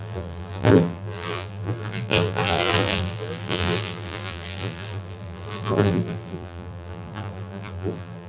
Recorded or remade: remade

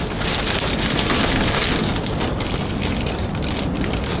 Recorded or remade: recorded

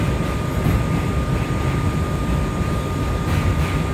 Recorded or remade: recorded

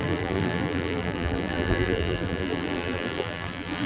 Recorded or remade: remade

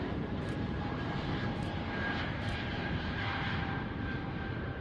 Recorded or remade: remade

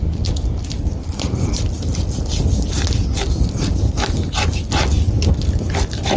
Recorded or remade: recorded